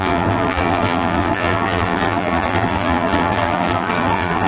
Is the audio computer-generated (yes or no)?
yes